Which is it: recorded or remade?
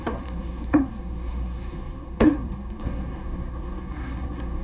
remade